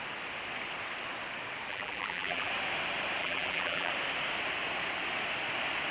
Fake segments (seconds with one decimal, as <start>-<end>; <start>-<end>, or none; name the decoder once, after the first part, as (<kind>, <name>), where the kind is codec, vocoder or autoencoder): 1.7-2.5 (vocoder, BigVGAN v2); 3.2-3.9